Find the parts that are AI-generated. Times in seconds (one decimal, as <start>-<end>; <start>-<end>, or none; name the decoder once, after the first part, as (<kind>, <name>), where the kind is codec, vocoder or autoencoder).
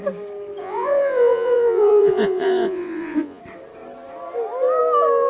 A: 0.6-3.4 (vocoder, Vocos)